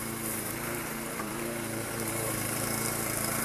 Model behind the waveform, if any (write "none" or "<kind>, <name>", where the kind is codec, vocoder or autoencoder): vocoder, BigVGAN v2